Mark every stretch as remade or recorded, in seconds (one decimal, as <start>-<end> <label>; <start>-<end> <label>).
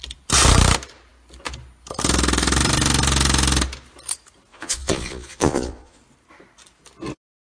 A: 0.0-4.5 recorded; 4.5-6.0 remade; 6.0-7.5 recorded